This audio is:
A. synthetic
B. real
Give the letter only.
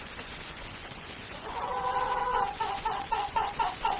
A